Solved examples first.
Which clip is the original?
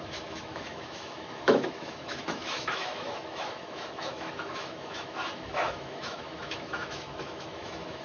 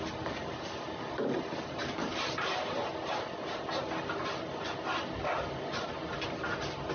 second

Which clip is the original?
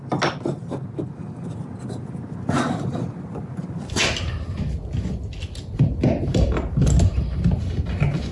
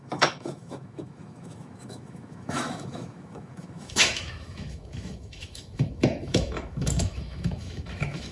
first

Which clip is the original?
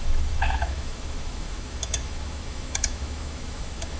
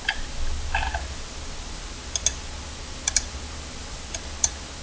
second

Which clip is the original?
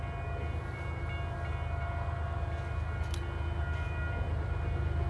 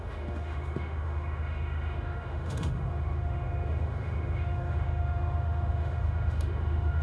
first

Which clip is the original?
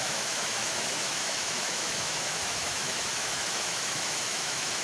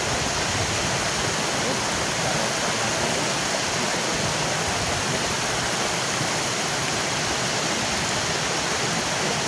second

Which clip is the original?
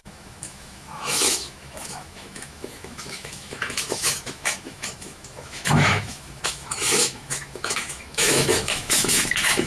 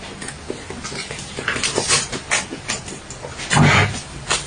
second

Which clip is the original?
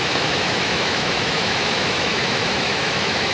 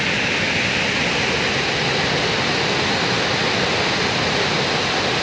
second